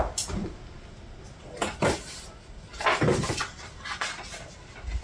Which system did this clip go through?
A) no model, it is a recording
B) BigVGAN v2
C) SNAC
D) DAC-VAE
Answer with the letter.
A